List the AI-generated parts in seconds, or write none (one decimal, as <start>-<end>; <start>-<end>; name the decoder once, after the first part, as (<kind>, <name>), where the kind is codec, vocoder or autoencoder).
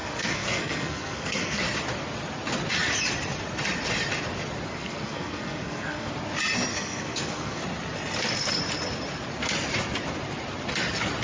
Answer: 0.0-1.6 (codec, SNAC); 4.7-6.1; 6.7-7.6